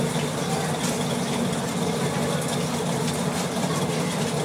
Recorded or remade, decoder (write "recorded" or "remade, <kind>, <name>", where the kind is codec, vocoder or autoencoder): recorded